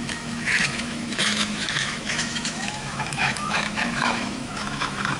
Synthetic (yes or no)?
yes